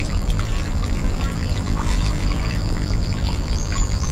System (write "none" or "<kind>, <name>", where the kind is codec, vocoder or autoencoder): vocoder, BigVGAN v2